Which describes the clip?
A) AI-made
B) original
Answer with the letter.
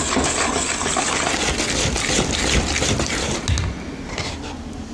B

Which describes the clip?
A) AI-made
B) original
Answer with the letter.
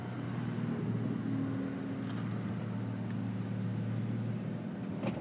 B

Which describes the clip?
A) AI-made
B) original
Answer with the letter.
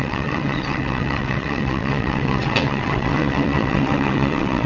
A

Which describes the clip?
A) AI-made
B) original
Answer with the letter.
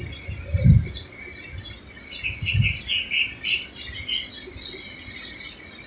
B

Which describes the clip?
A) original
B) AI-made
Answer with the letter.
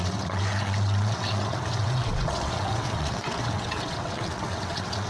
B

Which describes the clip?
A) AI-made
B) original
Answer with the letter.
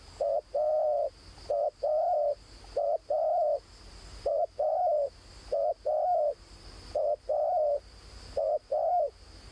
B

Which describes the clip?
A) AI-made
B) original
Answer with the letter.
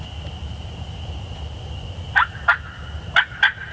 B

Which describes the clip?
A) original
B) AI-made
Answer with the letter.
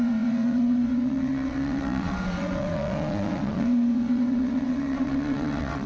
B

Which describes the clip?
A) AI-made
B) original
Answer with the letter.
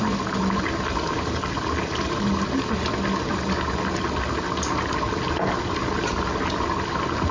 B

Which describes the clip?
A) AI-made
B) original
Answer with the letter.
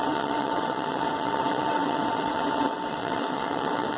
A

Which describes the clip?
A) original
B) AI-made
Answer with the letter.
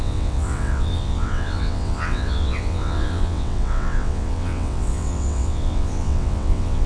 B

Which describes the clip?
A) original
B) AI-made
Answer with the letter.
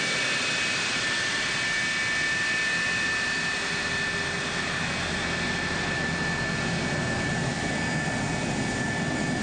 A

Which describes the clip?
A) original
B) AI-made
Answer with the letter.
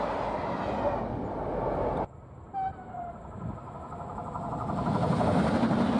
A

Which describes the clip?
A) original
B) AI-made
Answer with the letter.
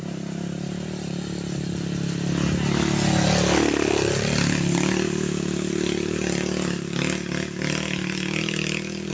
A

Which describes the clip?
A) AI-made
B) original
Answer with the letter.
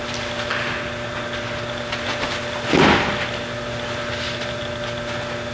B